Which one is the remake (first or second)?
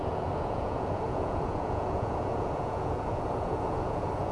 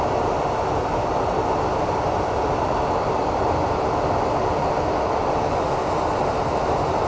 first